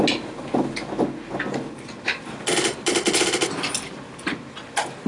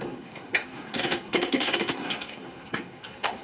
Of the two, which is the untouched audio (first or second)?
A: first